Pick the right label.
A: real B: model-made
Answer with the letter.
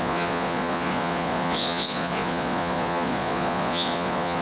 B